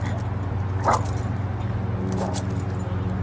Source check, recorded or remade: recorded